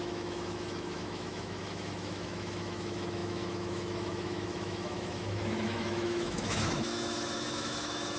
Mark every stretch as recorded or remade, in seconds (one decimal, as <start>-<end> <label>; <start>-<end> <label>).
0.0-8.2 remade